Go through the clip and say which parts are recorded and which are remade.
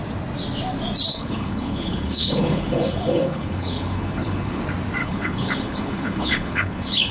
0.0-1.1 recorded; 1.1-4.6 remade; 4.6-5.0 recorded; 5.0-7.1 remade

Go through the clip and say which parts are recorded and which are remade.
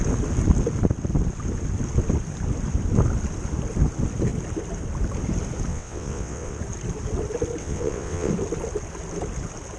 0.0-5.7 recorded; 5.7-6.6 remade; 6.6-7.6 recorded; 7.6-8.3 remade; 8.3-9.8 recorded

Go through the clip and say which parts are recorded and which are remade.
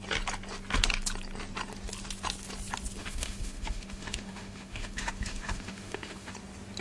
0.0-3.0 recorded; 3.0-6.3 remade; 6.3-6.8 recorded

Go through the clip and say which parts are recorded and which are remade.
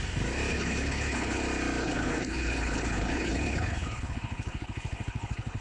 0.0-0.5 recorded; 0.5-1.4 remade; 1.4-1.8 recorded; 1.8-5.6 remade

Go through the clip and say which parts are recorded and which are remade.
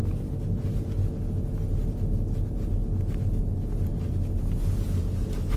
0.0-5.6 recorded